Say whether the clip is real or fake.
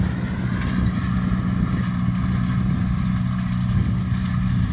real